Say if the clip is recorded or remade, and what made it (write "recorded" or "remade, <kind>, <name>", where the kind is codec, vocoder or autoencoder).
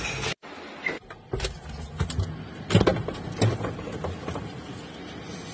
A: recorded